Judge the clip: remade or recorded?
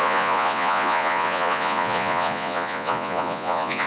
remade